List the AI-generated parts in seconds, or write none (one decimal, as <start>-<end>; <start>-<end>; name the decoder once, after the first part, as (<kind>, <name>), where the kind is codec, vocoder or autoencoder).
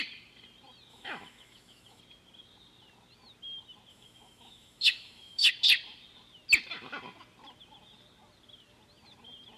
0.9-2.0 (autoencoder, DAC-VAE); 3.9-5.5